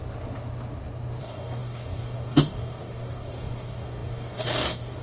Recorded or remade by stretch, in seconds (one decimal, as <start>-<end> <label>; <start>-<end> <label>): 0.0-1.2 recorded; 1.2-5.0 remade